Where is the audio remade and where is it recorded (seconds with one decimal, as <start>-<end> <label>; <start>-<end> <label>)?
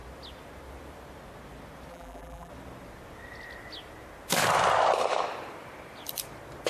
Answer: 0.0-1.9 recorded; 1.9-2.5 remade; 2.5-6.7 recorded